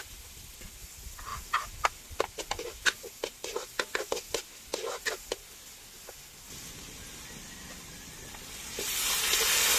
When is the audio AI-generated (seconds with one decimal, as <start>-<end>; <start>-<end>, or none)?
none